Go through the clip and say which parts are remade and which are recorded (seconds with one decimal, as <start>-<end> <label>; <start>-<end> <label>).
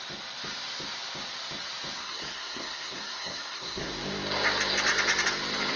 0.0-2.0 recorded; 2.0-3.9 remade; 3.9-5.8 recorded